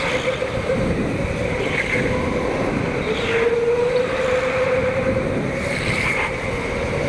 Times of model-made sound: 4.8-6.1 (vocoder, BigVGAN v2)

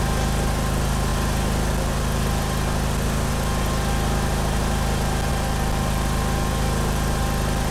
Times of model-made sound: none

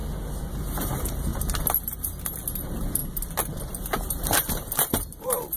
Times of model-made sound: 0.5-1.3 (vocoder, BigVGAN v2); 2.6-3.0; 3.7-5.6

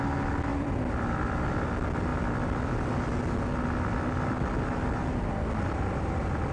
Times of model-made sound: 0.5-1.7 (vocoder, BigVGAN v2); 2.1-3.1

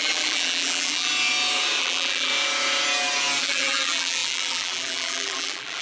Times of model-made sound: 0.0-1.1 (vocoder, BigVGAN v2); 1.8-2.3; 3.4-5.8

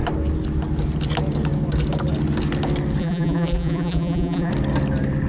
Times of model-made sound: 3.0-4.5 (vocoder, BigVGAN v2)

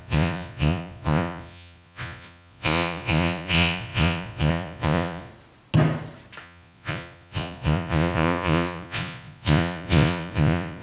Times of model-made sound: 0.0-5.3 (vocoder, Vocos); 6.4-10.8